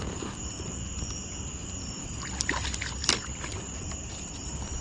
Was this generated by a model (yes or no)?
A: no